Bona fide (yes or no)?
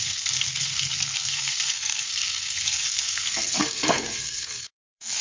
no